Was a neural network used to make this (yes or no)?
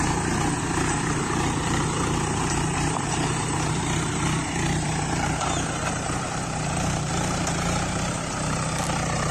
yes